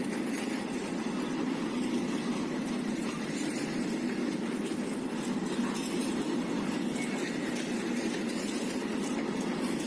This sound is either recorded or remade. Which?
recorded